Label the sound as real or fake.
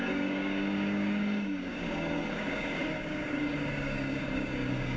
fake